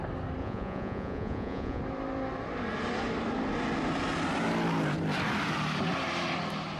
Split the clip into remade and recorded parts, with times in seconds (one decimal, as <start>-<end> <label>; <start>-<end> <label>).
0.0-0.4 recorded; 0.4-1.8 remade; 1.8-6.8 recorded